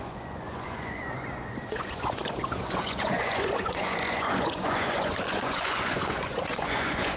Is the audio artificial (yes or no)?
yes